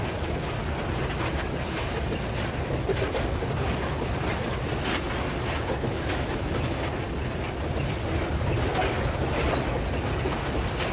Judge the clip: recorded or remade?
recorded